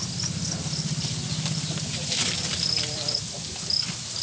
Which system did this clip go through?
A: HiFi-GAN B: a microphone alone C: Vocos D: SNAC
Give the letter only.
B